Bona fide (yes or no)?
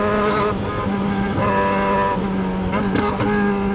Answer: yes